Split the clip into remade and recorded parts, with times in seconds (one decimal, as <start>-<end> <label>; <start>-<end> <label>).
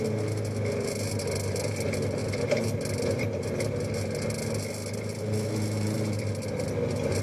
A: 0.0-7.2 recorded